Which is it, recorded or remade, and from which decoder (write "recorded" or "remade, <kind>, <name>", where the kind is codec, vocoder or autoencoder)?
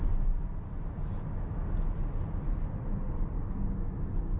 recorded